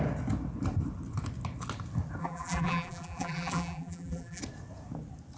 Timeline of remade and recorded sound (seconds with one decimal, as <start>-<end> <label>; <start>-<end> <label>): 0.0-2.2 recorded; 2.2-4.4 remade; 4.4-5.4 recorded